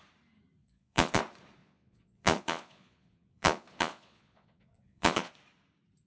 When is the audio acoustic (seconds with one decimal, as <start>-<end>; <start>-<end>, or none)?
0.0-0.6; 1.2-1.6; 5.3-6.1